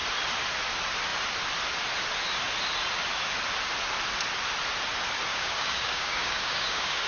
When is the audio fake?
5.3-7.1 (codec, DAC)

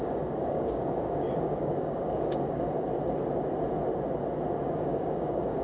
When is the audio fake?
0.0-2.9 (codec, DAC); 4.6-5.6

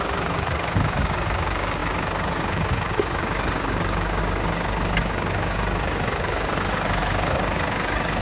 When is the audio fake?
0.0-8.2 (codec, DAC)

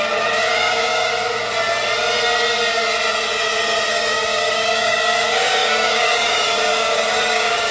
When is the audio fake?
0.0-1.1 (codec, DAC); 3.9-7.7

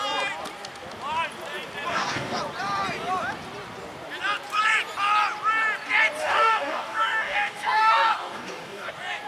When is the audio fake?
1.9-2.4 (codec, DAC); 6.2-8.9

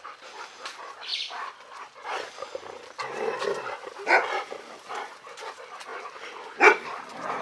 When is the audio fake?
none